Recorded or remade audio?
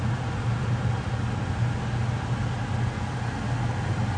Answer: recorded